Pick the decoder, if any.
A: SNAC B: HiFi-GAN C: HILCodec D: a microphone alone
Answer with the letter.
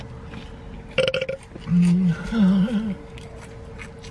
D